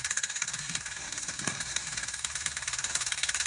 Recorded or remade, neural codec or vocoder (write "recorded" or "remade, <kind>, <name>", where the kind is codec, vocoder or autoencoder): remade, codec, SNAC